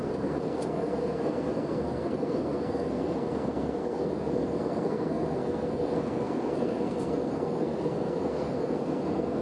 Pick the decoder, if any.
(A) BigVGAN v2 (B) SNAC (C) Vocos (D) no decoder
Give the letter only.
B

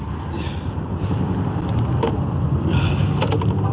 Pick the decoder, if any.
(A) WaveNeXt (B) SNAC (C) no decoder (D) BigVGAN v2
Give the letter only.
C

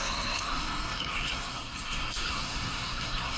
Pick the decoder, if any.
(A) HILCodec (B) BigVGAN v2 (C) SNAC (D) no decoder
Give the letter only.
C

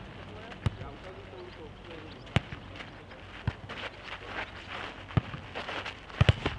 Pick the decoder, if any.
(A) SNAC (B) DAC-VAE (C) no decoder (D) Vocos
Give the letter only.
C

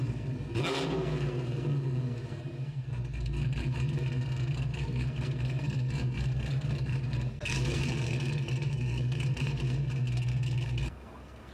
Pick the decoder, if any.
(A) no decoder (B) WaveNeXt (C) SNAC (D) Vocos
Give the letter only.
C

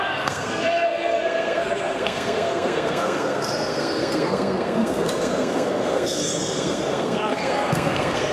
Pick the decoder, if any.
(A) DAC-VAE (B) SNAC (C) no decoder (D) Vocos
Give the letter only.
B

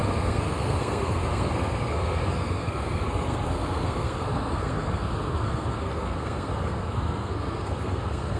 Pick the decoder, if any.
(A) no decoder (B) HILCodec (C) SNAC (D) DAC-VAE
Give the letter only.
C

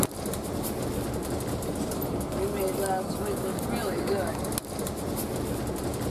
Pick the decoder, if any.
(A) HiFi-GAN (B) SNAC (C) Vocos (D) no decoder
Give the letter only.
D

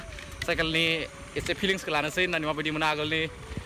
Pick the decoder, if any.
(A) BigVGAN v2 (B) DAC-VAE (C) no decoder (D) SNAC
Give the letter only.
C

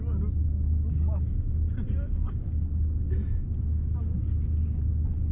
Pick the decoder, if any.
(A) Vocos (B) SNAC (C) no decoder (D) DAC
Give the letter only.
C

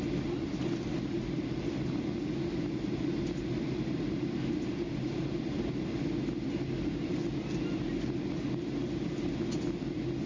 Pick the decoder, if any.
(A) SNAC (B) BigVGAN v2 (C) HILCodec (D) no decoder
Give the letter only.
D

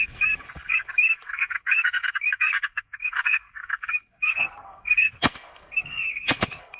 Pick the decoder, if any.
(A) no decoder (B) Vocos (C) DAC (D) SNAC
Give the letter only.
D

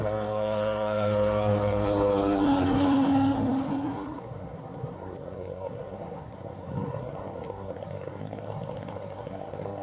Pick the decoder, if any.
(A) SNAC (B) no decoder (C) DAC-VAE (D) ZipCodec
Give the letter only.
A